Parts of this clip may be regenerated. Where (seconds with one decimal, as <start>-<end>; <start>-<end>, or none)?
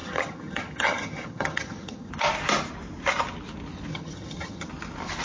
0.0-2.1; 3.9-4.7